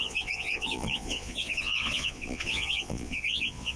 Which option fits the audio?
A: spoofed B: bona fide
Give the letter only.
A